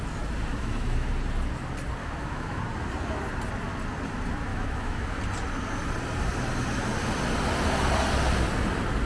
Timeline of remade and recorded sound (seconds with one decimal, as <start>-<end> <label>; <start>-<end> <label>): 0.0-0.5 recorded; 0.5-1.1 remade; 1.1-2.0 recorded; 2.0-2.6 remade; 2.6-4.5 recorded; 4.5-5.2 remade; 5.2-9.1 recorded